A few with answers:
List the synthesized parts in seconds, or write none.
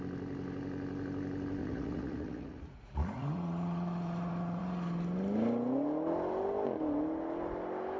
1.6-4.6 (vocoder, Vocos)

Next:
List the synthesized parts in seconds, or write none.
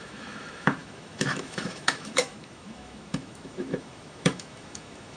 0.0-5.2 (autoencoder, DAC-VAE)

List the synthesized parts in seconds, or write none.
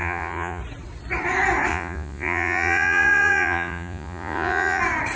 0.0-0.6 (vocoder, Vocos); 1.7-4.8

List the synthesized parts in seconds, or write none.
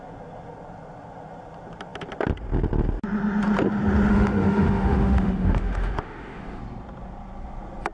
4.1-6.6 (autoencoder, DAC-VAE)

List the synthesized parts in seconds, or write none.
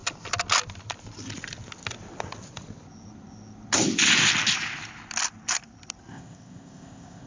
6.1-7.3 (codec, ZipCodec)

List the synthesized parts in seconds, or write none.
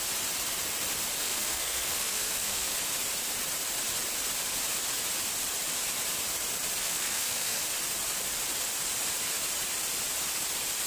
1.2-2.8 (codec, SNAC); 6.8-7.6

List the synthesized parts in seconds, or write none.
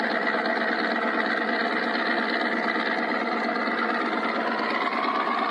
none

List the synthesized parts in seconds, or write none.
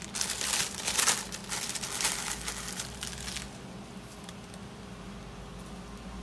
none